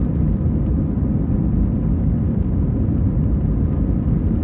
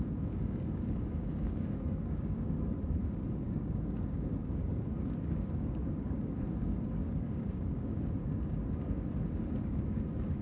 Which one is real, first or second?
first